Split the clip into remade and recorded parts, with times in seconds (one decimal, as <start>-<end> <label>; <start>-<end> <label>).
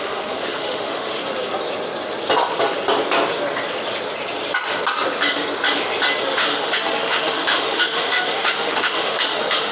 0.0-1.2 remade; 1.2-6.2 recorded; 6.2-9.7 remade